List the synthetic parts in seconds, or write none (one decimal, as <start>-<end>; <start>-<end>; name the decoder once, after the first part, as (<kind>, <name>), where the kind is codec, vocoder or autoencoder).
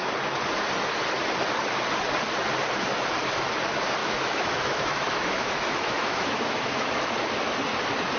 4.0-7.0 (autoencoder, DAC-VAE)